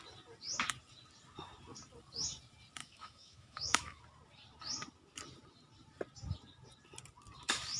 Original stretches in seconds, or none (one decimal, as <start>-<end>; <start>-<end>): 0.0-2.8; 4.0-7.8